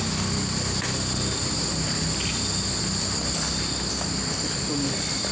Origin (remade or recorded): recorded